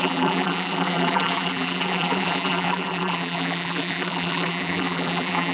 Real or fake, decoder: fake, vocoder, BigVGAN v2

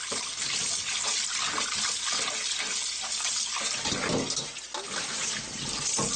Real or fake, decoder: real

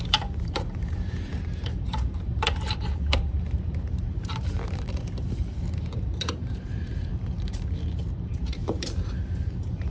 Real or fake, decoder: fake, vocoder, BigVGAN v2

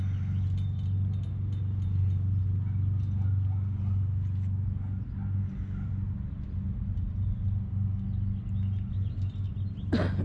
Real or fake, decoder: real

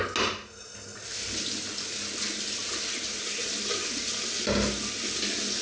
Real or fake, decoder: real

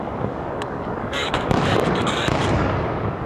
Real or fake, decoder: fake, codec, DAC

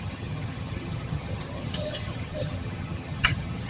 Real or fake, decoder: fake, vocoder, HiFi-GAN